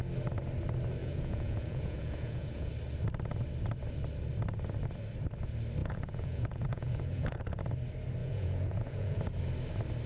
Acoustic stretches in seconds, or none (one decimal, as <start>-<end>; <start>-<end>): 0.0-1.0; 2.7-5.8; 7.6-8.2; 9.2-10.1